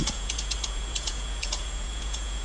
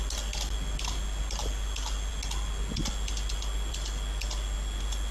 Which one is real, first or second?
second